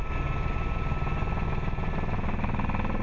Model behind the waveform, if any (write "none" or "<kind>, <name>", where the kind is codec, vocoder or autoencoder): none